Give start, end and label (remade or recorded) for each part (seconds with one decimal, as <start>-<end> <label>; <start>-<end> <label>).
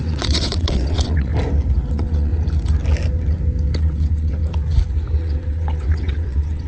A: 0.0-1.3 remade; 1.3-1.9 recorded; 1.9-2.3 remade; 2.3-3.8 recorded; 3.8-4.4 remade; 4.4-5.2 recorded; 5.2-6.7 remade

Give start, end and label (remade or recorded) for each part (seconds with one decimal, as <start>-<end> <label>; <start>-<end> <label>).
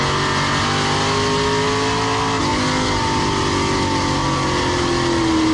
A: 0.0-5.5 recorded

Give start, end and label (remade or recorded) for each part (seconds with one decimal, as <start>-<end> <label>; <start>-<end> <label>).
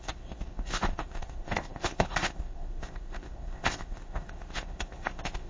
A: 0.0-5.5 remade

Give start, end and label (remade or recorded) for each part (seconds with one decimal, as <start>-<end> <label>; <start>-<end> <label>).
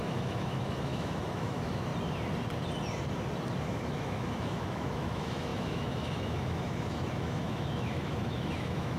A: 0.0-1.9 remade; 1.9-3.6 recorded; 3.6-9.0 remade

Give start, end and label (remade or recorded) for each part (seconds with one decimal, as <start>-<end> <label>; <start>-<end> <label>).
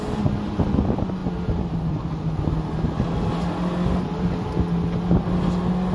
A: 0.0-5.9 recorded